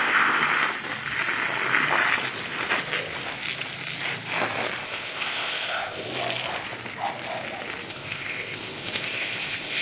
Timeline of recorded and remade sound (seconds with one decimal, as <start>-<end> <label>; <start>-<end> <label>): 0.0-0.4 remade; 0.4-4.8 recorded; 4.8-6.1 remade; 6.1-7.9 recorded; 7.9-9.8 remade